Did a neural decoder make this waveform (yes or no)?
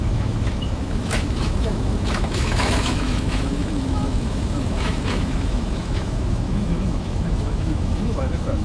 yes